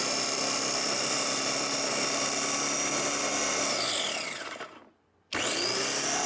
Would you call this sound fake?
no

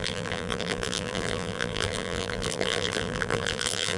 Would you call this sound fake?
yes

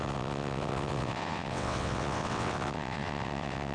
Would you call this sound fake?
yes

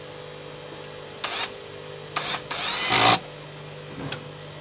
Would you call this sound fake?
no